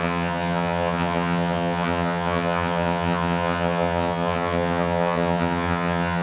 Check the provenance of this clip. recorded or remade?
remade